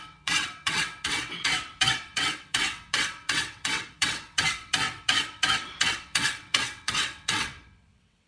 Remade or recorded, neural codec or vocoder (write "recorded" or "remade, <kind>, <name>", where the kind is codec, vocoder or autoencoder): remade, vocoder, WaveNeXt